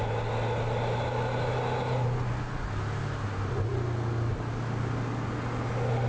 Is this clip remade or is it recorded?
recorded